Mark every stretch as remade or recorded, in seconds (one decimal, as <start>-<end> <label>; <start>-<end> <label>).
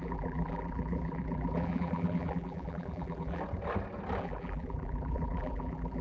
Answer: 0.0-3.4 remade; 3.4-4.2 recorded; 4.2-6.0 remade